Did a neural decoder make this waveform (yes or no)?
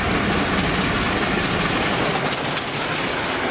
no